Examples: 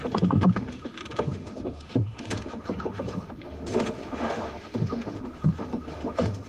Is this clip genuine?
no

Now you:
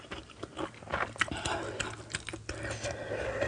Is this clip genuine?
yes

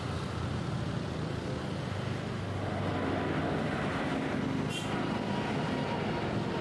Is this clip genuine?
yes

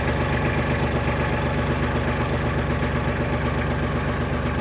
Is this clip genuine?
yes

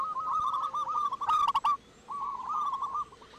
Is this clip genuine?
yes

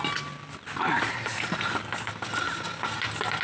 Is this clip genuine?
yes